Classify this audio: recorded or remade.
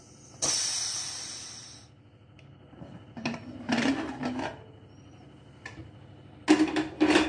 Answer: recorded